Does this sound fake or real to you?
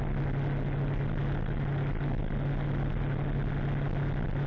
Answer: real